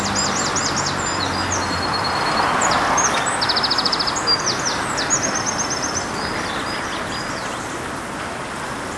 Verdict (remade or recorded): recorded